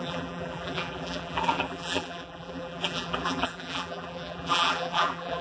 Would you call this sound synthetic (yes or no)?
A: yes